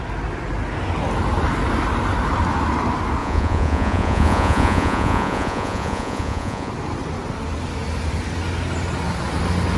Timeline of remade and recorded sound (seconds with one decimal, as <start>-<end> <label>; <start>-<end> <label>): 0.0-3.2 recorded; 3.2-6.7 remade; 6.7-9.8 recorded